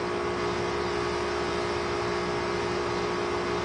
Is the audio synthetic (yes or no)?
no